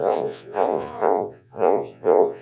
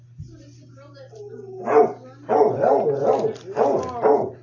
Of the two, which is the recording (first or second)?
second